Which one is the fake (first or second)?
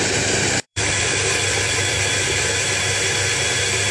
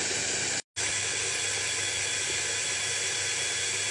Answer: first